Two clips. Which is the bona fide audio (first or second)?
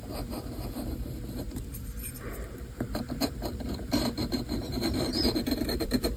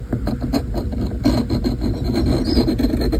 second